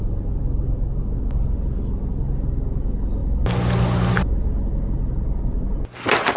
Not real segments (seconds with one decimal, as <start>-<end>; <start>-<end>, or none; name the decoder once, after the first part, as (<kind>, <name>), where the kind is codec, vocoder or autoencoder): none

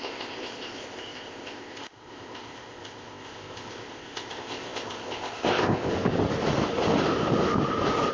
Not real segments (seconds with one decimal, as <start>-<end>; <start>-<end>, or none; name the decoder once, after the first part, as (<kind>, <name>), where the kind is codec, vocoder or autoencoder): 0.0-5.9 (codec, ZipCodec)

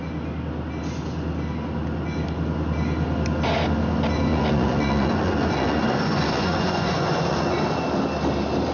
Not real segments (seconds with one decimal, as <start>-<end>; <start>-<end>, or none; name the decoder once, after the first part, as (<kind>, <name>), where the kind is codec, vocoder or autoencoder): 4.3-7.6 (vocoder, Vocos)

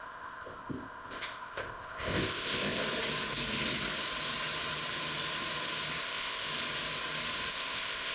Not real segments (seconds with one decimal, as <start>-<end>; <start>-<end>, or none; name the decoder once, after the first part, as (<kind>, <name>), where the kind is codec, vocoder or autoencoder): 0.0-2.8 (codec, ZipCodec); 6.0-6.5; 7.5-8.1

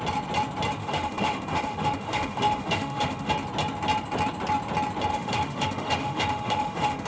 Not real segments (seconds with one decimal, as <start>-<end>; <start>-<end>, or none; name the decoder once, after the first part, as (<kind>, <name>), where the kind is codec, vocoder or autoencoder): 0.8-3.3 (autoencoder, DAC-VAE); 5.1-7.1

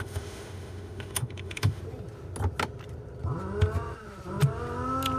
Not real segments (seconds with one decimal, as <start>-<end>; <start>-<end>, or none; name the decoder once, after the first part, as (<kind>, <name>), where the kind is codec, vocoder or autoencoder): 0.0-1.8 (autoencoder, DAC-VAE)